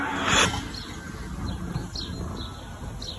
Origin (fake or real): real